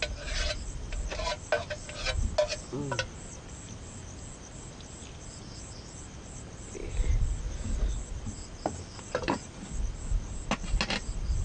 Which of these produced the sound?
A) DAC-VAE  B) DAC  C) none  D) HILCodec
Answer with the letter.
C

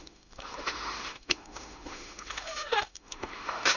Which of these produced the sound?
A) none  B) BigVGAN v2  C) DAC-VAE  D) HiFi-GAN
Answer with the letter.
C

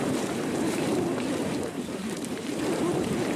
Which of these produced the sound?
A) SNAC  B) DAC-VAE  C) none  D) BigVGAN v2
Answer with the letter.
D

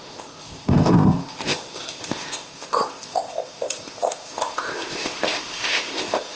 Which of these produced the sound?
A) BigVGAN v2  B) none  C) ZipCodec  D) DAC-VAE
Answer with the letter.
C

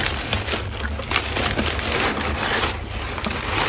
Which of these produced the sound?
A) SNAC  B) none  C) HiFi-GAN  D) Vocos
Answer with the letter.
B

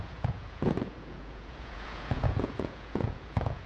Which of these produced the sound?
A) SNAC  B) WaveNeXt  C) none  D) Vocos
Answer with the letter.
D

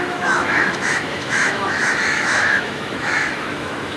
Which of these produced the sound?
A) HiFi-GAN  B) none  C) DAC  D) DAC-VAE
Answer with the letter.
D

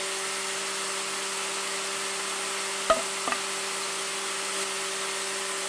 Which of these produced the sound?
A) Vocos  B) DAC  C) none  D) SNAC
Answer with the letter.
C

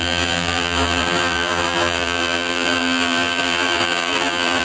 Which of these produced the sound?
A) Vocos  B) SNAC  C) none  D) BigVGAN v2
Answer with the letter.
D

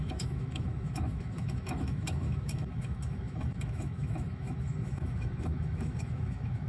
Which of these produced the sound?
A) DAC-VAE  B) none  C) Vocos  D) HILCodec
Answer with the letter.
A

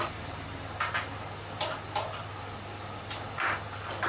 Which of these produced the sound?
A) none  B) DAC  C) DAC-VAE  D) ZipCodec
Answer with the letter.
A